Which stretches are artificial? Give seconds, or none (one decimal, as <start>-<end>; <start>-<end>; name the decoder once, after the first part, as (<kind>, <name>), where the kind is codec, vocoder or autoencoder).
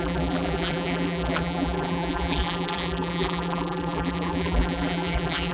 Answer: 0.0-5.5 (vocoder, BigVGAN v2)